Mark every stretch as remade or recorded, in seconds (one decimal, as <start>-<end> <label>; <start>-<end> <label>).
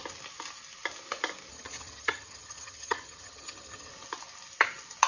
0.0-1.5 recorded; 1.5-3.9 remade; 3.9-5.1 recorded